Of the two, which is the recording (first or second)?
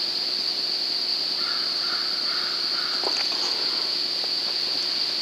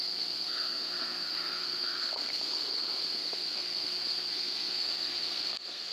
first